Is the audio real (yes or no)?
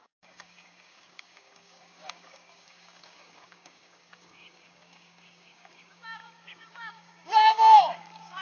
no